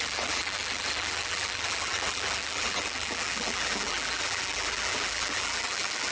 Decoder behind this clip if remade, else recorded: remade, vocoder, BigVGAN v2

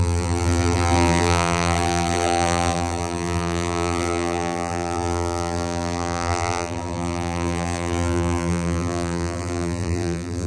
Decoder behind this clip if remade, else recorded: remade, vocoder, BigVGAN v2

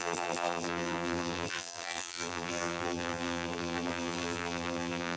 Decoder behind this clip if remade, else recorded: remade, vocoder, BigVGAN v2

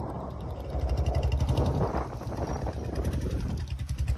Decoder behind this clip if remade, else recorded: remade, vocoder, BigVGAN v2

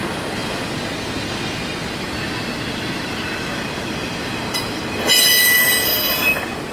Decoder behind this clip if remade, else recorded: recorded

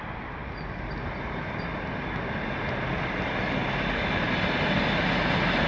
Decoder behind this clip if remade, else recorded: recorded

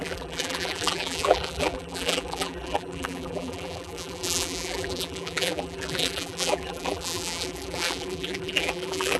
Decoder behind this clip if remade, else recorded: remade, vocoder, BigVGAN v2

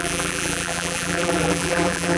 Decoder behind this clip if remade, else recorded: remade, vocoder, BigVGAN v2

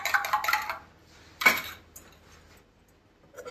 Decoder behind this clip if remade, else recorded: recorded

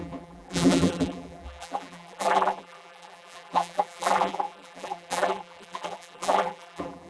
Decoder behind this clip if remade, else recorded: remade, vocoder, BigVGAN v2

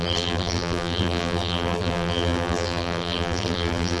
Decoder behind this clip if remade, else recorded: remade, vocoder, BigVGAN v2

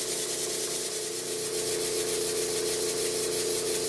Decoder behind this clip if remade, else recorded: recorded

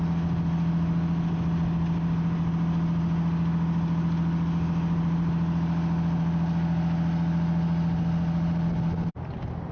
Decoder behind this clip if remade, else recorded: recorded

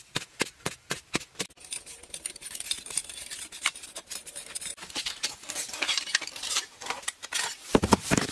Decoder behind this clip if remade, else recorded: remade, vocoder, BigVGAN v2